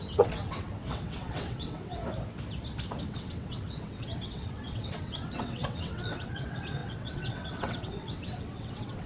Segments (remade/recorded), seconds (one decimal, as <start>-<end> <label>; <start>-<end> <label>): 0.0-2.0 remade; 2.0-3.0 recorded; 3.0-9.1 remade